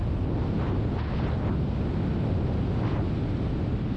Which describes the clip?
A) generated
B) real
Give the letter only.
B